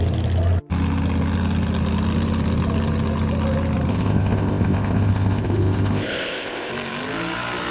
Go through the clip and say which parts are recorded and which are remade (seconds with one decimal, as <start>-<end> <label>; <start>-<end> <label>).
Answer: 0.0-3.9 recorded; 3.9-6.7 remade; 6.7-7.7 recorded